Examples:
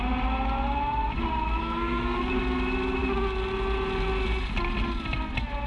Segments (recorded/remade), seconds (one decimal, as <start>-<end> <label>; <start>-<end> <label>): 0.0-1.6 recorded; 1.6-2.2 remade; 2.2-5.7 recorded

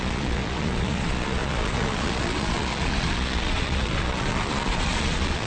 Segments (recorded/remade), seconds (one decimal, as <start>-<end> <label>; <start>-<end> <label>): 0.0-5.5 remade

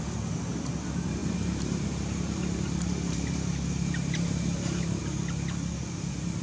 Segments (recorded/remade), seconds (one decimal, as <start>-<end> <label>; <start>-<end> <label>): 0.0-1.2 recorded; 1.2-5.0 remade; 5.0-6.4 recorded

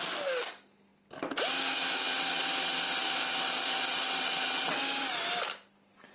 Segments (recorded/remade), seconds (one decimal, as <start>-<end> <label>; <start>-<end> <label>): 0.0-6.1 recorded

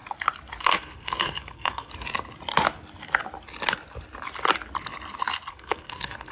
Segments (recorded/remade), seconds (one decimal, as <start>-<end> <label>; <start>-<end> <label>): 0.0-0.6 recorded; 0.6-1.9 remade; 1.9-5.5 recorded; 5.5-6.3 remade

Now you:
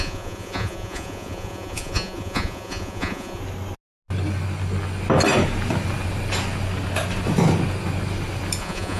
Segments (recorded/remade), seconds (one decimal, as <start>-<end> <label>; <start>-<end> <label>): 0.0-3.4 remade; 3.4-8.6 recorded; 8.6-9.0 remade